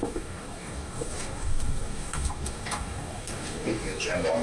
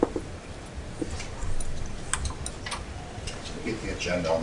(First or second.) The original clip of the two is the second